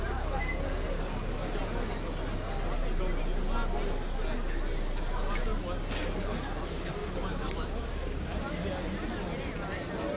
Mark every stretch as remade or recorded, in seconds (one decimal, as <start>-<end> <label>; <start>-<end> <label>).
0.0-7.0 recorded; 7.0-7.9 remade; 7.9-10.2 recorded

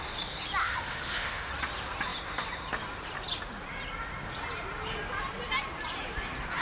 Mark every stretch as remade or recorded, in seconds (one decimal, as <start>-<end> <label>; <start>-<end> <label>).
0.0-0.6 recorded; 0.6-1.5 remade; 1.5-6.6 recorded

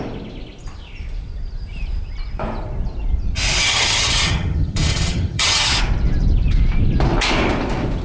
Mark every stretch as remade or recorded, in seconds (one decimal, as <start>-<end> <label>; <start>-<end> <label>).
0.0-3.6 recorded; 3.6-5.8 remade; 5.8-8.0 recorded

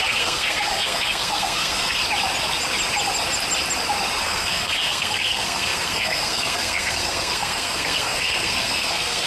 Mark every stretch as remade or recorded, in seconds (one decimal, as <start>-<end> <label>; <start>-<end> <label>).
0.0-2.0 remade; 2.0-4.2 recorded; 4.2-9.3 remade

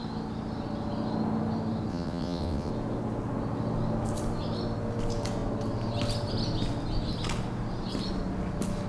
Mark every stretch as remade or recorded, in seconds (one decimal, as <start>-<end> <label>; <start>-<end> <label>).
0.0-1.9 recorded; 1.9-2.7 remade; 2.7-8.9 recorded

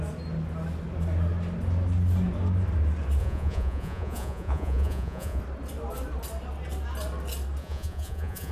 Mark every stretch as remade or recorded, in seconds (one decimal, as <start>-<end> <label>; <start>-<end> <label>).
0.0-3.2 recorded; 3.2-5.4 remade; 5.4-7.6 recorded; 7.6-8.5 remade

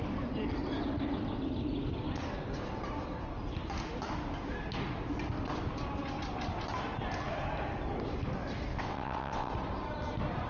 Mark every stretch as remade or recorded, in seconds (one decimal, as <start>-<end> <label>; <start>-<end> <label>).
0.0-8.7 recorded; 8.7-9.5 remade; 9.5-10.5 recorded

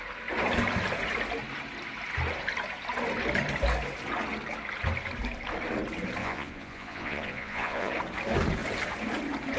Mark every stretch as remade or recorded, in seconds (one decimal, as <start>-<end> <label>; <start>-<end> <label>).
0.0-6.2 recorded; 6.2-7.9 remade; 7.9-9.6 recorded